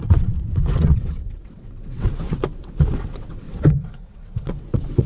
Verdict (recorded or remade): remade